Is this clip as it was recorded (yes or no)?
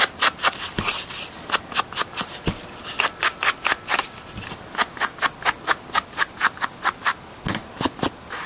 yes